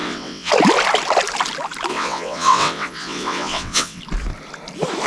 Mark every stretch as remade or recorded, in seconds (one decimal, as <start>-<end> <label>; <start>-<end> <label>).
0.0-0.5 remade; 0.5-1.9 recorded; 1.9-4.0 remade; 4.0-5.1 recorded